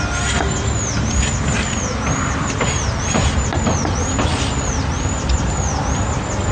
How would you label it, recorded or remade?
recorded